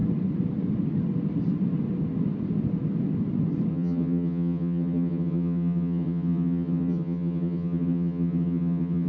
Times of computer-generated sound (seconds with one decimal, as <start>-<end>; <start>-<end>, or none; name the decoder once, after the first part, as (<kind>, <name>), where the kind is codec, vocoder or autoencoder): 3.7-9.1 (vocoder, HiFi-GAN)